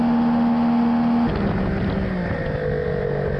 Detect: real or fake real